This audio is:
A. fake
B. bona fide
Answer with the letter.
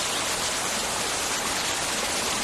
B